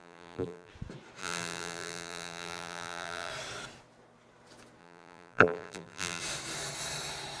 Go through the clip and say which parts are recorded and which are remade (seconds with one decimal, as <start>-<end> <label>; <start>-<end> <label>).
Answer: 0.0-0.7 remade; 0.7-1.2 recorded; 1.2-3.3 remade; 3.3-4.8 recorded; 4.8-6.2 remade; 6.2-7.4 recorded